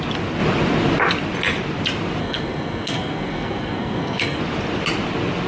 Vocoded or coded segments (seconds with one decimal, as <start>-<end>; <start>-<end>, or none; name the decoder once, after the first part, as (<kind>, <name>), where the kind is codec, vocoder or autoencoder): 2.2-4.4 (codec, SNAC)